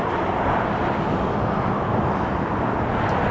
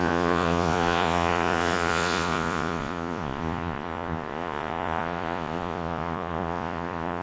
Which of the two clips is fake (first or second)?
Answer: second